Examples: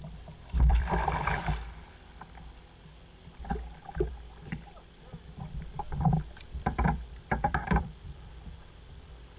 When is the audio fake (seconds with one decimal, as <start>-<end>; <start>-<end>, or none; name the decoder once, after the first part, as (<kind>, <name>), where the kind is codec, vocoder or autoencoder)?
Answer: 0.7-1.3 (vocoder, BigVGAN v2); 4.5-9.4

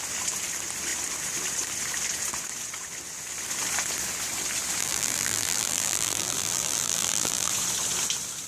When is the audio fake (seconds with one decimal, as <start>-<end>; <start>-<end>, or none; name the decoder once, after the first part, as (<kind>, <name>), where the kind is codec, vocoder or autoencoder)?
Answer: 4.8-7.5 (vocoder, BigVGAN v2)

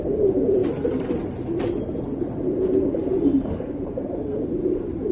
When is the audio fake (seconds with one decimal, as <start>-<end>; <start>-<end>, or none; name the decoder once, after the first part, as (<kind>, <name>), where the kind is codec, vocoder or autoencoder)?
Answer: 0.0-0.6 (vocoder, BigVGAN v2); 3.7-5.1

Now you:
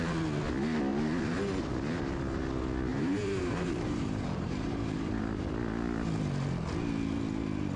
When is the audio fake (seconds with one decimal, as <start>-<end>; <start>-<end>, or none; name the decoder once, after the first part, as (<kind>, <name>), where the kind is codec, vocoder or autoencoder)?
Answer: 0.9-1.4 (vocoder, BigVGAN v2); 2.9-5.2

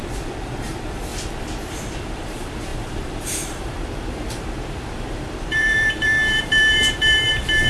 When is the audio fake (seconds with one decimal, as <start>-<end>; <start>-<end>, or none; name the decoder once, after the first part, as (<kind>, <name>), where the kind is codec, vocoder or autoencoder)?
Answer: 0.0-1.1 (vocoder, BigVGAN v2); 2.0-7.7

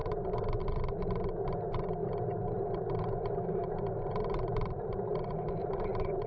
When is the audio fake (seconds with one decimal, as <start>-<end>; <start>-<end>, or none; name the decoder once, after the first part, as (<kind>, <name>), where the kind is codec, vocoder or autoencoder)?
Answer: 2.0-5.8 (vocoder, BigVGAN v2)